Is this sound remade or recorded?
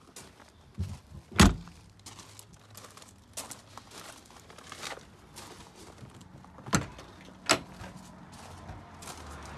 recorded